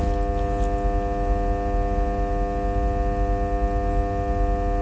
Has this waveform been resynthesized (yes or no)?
no